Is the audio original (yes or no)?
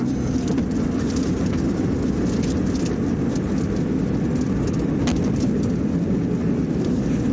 yes